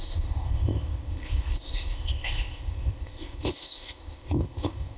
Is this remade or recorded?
remade